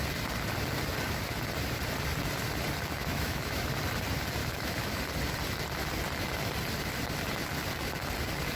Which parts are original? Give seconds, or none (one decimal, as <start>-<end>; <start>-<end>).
0.0-3.0; 3.6-4.4; 5.0-8.6